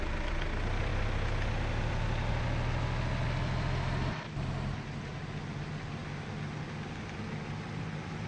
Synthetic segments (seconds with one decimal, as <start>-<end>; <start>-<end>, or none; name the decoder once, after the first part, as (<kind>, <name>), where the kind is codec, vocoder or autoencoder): none